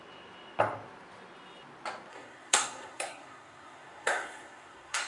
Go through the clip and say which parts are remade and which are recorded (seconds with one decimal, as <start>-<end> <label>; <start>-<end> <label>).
0.0-2.1 recorded; 2.1-5.1 remade